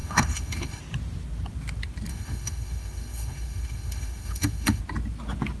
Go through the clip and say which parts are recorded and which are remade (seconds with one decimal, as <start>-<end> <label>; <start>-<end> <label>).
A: 0.0-0.8 remade; 0.8-2.1 recorded; 2.1-4.8 remade; 4.8-5.6 recorded